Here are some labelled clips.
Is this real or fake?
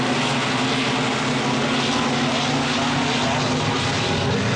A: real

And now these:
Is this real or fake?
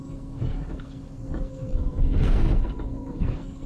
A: fake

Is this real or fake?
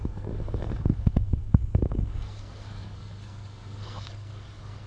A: fake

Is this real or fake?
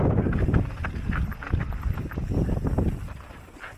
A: real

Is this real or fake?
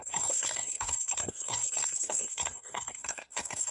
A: fake